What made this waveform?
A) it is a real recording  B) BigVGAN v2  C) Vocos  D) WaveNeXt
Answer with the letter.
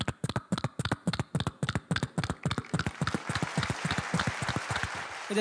A